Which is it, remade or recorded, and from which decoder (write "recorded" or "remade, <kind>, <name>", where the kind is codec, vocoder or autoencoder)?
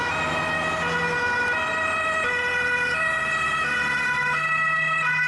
recorded